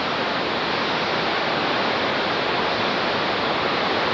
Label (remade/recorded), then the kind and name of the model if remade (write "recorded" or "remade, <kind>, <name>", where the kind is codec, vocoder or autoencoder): recorded